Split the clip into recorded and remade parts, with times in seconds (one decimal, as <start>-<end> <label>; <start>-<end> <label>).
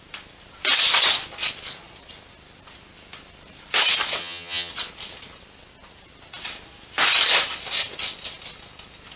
0.0-4.2 recorded; 4.2-4.7 remade; 4.7-9.2 recorded